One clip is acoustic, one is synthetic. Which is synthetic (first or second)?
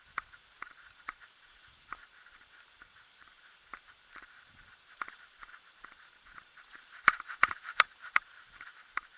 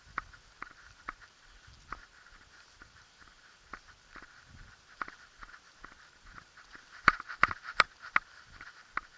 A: first